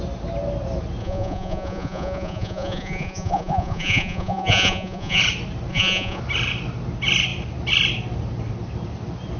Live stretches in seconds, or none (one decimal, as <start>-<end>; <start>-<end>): 0.0-1.0; 5.2-5.7; 6.2-9.4

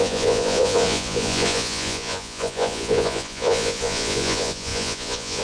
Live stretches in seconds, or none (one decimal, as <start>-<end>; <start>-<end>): none

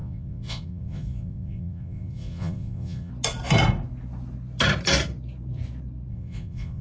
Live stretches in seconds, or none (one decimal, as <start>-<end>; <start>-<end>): 3.1-6.1

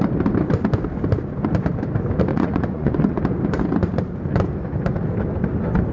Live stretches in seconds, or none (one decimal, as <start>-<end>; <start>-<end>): 0.0-2.3; 3.2-5.9

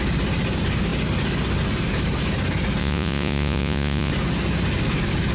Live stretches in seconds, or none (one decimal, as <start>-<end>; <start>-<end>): 0.0-2.8; 4.1-5.3

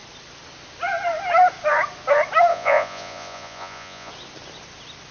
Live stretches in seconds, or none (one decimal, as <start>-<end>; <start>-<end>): 0.0-2.5; 4.1-5.1

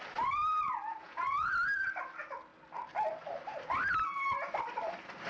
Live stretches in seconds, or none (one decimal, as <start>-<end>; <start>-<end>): 0.0-1.0; 1.5-5.3